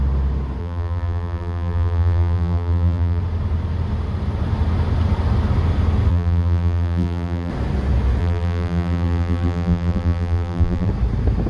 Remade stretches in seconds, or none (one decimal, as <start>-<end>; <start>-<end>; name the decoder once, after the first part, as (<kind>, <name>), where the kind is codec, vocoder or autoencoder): 0.6-3.2 (vocoder, BigVGAN v2); 6.1-7.5; 8.2-10.9